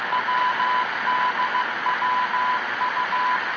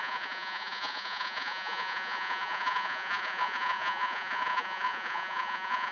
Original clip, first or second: first